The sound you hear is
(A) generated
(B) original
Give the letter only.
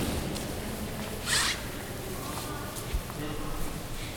B